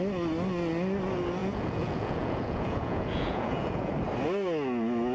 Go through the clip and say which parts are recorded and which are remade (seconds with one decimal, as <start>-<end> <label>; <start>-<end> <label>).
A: 0.0-1.4 recorded; 1.4-3.9 remade; 3.9-5.1 recorded